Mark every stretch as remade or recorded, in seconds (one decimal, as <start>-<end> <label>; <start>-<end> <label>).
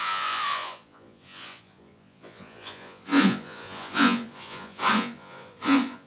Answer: 0.0-6.1 remade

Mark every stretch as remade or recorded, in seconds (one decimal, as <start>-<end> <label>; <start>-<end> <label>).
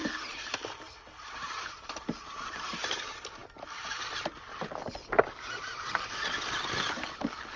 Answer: 0.0-7.6 recorded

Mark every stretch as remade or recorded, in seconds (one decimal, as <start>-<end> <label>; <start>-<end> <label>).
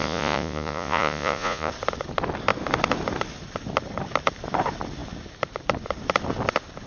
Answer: 0.0-1.7 remade; 1.7-6.9 recorded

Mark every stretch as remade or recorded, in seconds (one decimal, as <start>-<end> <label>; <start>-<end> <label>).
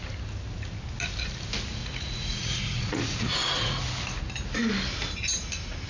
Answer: 0.0-1.8 recorded; 1.8-3.8 remade; 3.8-5.9 recorded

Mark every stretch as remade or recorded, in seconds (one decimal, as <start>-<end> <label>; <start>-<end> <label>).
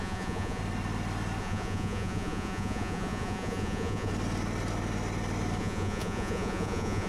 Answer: 0.0-0.6 remade; 0.6-1.4 recorded; 1.4-4.1 remade; 4.1-5.6 recorded; 5.6-7.1 remade